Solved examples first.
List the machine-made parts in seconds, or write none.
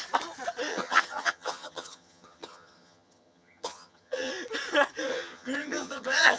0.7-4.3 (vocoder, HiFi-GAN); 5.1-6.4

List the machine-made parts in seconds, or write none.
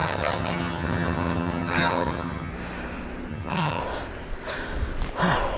0.0-2.5 (vocoder, HiFi-GAN); 3.3-3.8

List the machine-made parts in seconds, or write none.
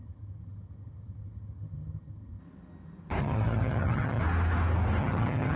0.0-2.4 (vocoder, HiFi-GAN); 3.2-4.2; 5.0-5.6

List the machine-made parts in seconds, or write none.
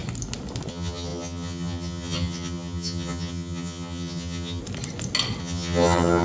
0.7-4.6 (vocoder, HiFi-GAN); 5.4-6.2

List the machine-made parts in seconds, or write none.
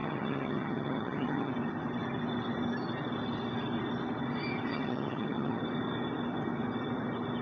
0.0-1.5 (vocoder, HiFi-GAN); 4.7-5.6